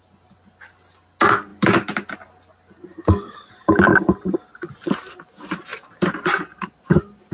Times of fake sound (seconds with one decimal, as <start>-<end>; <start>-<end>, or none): none